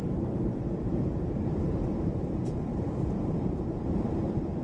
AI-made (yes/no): yes